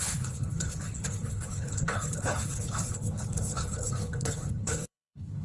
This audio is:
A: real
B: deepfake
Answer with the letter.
B